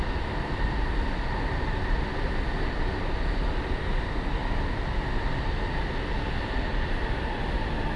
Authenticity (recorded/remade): recorded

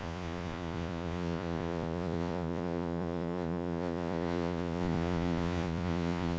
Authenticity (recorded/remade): remade